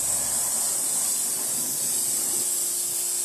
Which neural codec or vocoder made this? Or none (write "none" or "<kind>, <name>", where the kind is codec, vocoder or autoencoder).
none